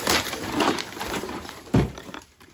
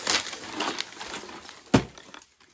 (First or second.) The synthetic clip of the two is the first